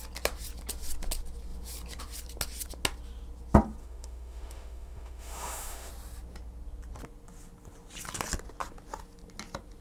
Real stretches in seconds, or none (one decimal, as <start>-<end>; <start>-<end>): 0.0-3.8; 5.9-9.8